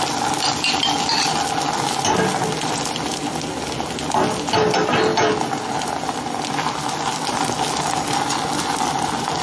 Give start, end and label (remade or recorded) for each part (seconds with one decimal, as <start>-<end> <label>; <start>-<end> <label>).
0.0-9.4 recorded